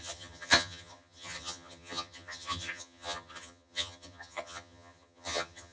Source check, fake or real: fake